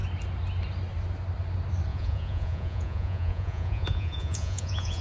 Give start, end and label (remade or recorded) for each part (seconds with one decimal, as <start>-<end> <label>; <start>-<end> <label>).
0.0-1.9 recorded; 1.9-5.0 remade